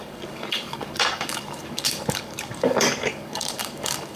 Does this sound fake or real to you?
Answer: fake